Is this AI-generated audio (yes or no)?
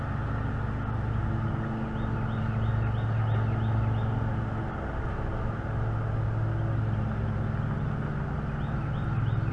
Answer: no